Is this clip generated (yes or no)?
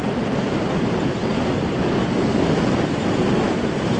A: no